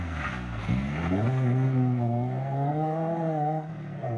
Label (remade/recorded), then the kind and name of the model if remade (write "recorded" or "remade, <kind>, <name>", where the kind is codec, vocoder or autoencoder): remade, codec, SNAC